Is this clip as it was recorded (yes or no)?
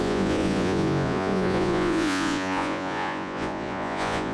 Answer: no